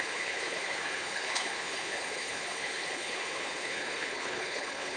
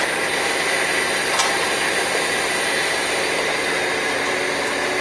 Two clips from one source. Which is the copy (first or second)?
first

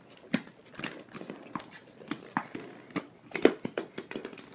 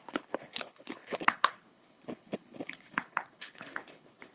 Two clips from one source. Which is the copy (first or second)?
second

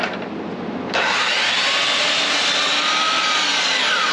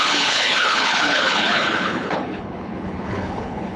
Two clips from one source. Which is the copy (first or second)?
second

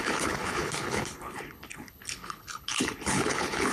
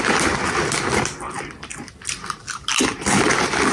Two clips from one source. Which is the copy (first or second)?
first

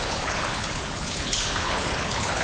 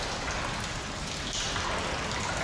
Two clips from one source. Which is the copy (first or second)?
first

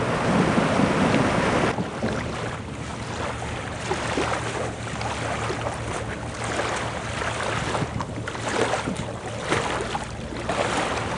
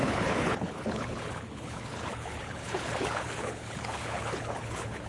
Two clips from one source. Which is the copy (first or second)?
second